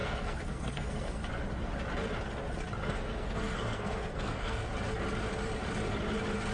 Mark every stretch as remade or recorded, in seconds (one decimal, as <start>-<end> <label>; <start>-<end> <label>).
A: 0.0-1.3 remade; 1.3-2.8 recorded; 2.8-4.7 remade; 4.7-6.5 recorded